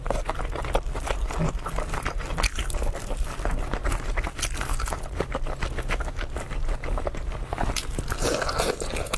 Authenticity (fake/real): real